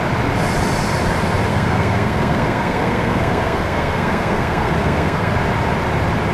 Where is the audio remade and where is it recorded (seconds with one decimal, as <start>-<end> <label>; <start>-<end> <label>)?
0.0-1.5 recorded; 1.5-5.3 remade; 5.3-6.3 recorded